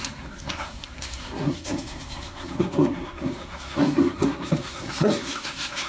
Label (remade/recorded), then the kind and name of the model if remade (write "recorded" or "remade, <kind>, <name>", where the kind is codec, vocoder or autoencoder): remade, codec, SNAC